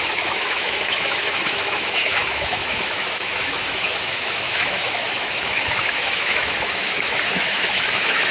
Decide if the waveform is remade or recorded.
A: remade